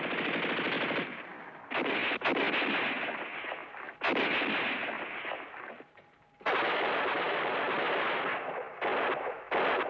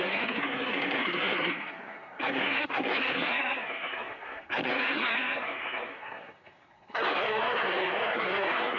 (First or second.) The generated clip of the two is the second